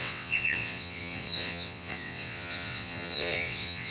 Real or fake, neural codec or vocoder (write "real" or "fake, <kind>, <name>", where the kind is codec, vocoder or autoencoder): fake, vocoder, WaveNeXt